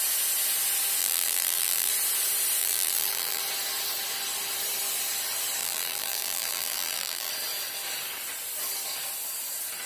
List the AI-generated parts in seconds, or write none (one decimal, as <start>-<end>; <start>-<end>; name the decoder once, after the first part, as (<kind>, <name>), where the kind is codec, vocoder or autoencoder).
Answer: 1.0-1.9 (vocoder, BigVGAN v2); 2.6-3.4; 5.6-7.3